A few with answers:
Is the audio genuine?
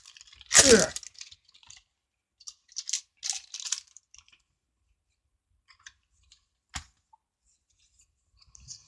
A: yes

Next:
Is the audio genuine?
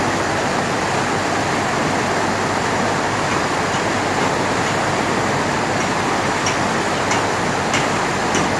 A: yes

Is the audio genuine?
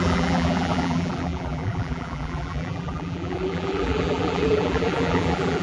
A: no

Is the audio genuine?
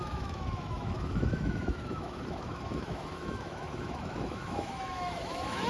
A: no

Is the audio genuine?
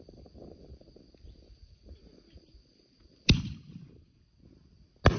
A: no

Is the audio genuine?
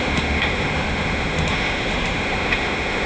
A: no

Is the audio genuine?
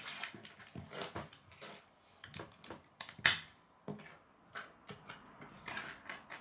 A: yes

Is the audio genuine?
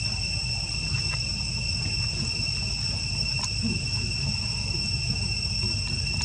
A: yes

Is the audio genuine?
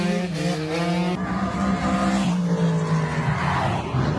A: yes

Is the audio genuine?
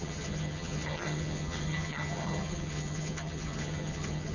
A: no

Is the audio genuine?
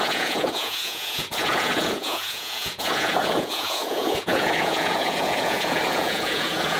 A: no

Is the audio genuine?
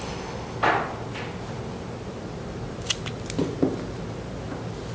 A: yes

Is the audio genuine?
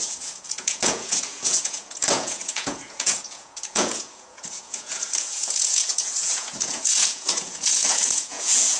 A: no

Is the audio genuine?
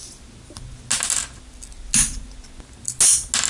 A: yes